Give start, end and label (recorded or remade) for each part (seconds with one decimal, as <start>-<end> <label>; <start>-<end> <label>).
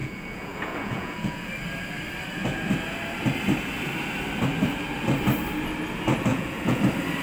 0.0-1.5 remade; 1.5-6.3 recorded; 6.3-6.8 remade; 6.8-7.2 recorded